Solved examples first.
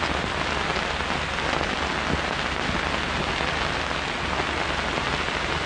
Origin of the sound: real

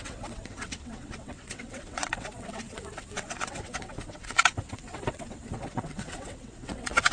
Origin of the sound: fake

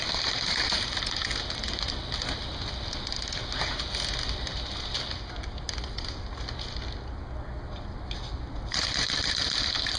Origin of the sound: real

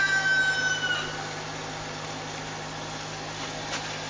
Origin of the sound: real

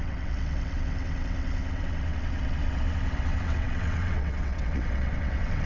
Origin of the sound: fake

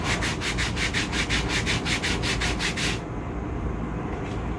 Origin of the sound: real